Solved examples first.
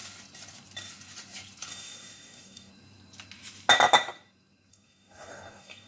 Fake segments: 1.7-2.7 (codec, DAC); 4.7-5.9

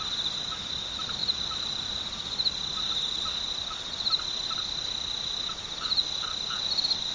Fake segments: none

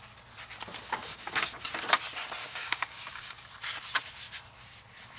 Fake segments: 1.1-1.6 (codec, DAC); 2.4-3.5

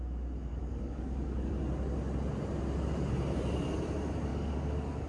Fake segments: 0.5-1.5 (codec, DAC); 4.3-5.1

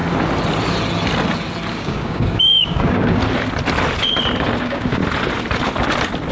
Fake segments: 1.7-3.2 (codec, DAC); 4.6-5.0